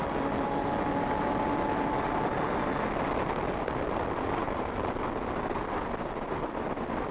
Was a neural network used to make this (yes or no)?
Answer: no